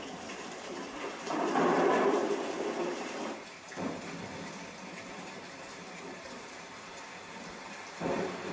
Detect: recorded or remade remade